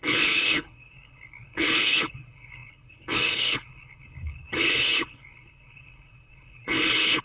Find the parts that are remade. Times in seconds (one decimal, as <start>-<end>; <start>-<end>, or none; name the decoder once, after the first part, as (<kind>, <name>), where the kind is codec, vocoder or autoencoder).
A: 0.0-7.2 (codec, HILCodec)